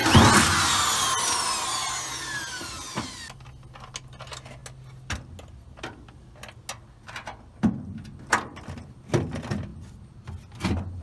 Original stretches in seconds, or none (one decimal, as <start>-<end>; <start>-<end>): 0.0-11.0

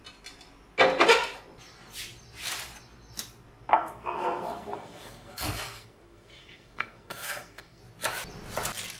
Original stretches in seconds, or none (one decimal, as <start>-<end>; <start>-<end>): 0.0-3.7; 7.8-9.0

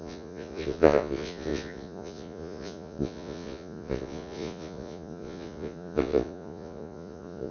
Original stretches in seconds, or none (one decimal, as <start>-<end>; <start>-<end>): none

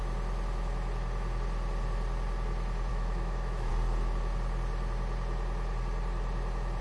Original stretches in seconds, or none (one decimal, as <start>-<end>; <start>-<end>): 0.0-2.9; 3.7-6.8

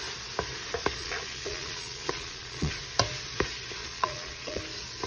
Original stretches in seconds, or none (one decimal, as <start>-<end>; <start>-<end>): 0.0-1.0; 2.7-3.8; 4.6-5.1

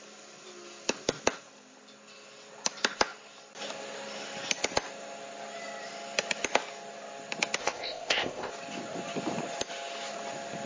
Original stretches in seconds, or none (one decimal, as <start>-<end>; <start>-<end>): 0.0-7.6; 8.5-10.7